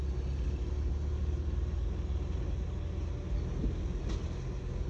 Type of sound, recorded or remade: recorded